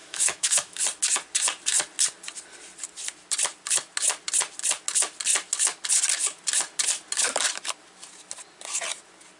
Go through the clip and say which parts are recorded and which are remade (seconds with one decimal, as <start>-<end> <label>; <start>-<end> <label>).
0.0-0.8 remade; 0.8-9.4 recorded